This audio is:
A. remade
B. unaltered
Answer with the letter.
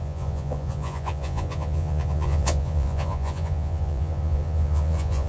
A